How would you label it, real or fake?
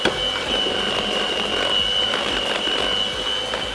real